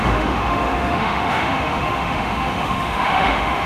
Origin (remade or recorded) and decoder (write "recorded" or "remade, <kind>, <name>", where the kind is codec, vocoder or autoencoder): remade, autoencoder, DAC-VAE